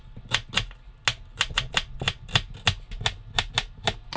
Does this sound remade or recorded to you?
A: recorded